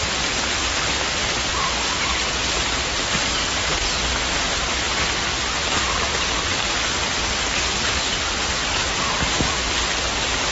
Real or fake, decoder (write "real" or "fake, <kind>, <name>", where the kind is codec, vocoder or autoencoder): real